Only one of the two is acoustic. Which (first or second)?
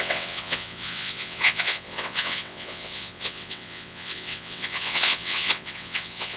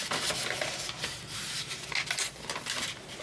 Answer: second